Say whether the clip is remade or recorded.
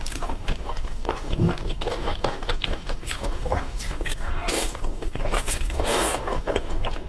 remade